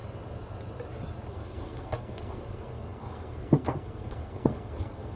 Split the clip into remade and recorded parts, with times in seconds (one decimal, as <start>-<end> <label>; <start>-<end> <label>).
0.0-1.3 recorded; 1.3-5.2 remade